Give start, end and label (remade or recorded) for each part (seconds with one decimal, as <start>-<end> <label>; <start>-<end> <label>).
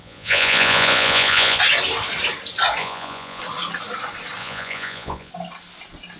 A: 0.0-1.6 remade; 1.6-2.8 recorded; 2.8-3.4 remade; 3.4-4.4 recorded; 4.4-5.3 remade; 5.3-6.2 recorded